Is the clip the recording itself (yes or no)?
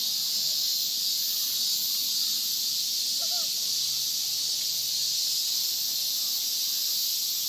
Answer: yes